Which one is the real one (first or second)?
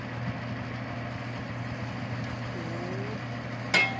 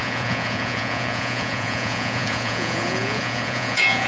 first